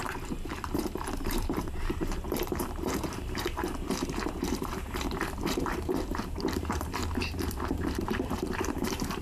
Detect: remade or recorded remade